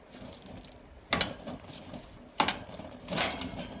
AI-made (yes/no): no